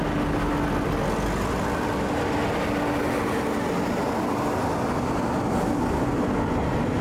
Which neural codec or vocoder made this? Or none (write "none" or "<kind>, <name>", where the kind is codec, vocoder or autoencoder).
none